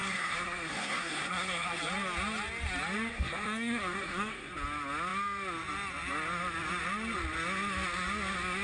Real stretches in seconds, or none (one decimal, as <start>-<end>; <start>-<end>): 1.8-3.1; 4.5-8.6